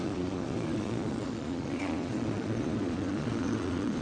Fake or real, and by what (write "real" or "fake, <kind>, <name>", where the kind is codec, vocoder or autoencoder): fake, vocoder, Vocos